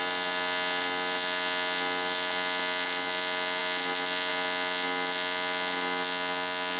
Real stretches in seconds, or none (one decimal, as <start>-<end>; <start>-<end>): 0.0-6.8

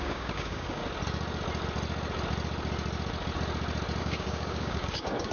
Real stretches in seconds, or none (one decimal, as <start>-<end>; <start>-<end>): 0.8-4.0

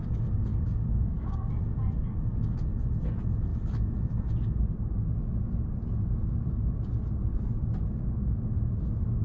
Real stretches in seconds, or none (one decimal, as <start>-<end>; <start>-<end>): 0.0-0.5; 1.5-9.2